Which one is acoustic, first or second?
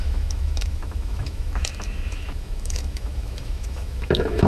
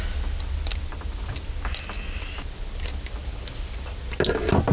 second